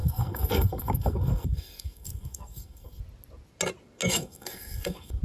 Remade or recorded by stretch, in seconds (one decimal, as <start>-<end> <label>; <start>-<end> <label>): 0.0-3.0 remade; 3.0-4.0 recorded; 4.0-5.2 remade